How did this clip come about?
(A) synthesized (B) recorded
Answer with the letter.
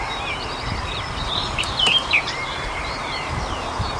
A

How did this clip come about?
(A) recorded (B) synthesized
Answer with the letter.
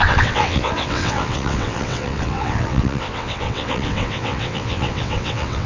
B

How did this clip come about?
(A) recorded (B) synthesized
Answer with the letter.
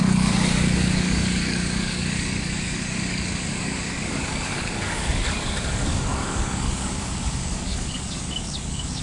B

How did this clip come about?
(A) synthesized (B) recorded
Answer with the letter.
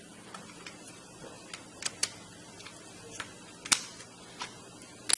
B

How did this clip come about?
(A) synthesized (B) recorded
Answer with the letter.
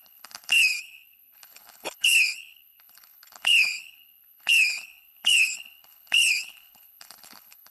A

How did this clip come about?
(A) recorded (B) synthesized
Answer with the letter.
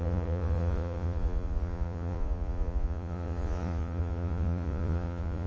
B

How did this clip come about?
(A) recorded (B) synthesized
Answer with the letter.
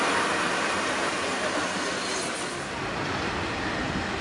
A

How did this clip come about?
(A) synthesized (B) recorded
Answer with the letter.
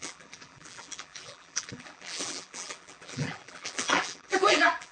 A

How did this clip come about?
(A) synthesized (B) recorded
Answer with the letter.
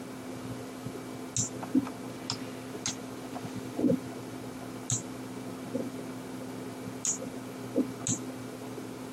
B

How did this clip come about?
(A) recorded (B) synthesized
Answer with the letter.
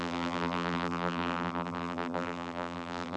B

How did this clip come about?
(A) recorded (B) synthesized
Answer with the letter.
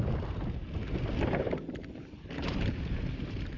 A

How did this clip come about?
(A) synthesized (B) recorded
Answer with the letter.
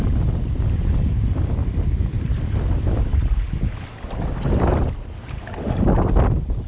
B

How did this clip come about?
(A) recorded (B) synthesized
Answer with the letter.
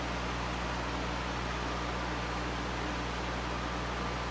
A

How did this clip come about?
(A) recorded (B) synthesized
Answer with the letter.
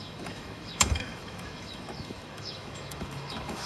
B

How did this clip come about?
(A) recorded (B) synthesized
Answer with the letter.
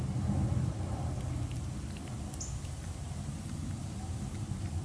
A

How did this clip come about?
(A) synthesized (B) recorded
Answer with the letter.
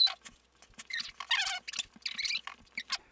B